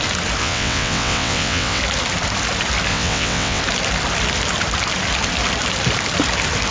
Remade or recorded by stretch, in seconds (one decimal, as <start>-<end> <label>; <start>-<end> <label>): 0.0-0.4 recorded; 0.4-1.8 remade; 1.8-2.9 recorded; 2.9-3.6 remade; 3.6-6.7 recorded